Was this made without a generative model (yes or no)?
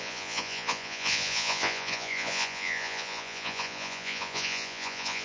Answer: no